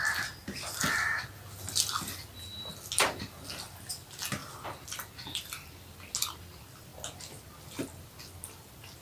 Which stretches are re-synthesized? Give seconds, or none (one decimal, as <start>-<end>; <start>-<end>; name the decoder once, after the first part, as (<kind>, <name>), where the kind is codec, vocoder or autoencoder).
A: 4.4-5.1 (vocoder, BigVGAN v2); 6.9-8.2